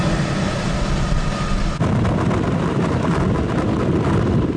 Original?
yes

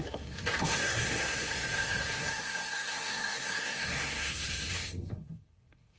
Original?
no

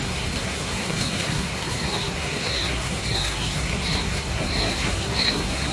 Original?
no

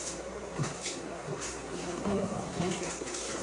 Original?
no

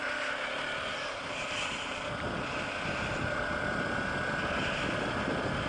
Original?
yes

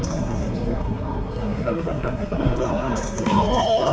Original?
no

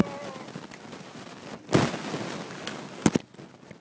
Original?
yes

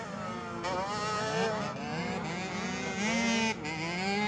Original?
yes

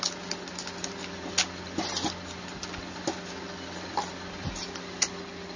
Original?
yes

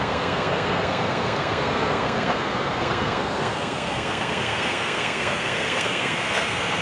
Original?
no